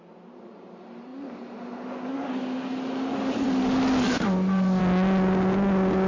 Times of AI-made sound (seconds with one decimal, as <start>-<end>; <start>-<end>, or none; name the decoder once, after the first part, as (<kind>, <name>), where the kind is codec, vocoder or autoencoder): none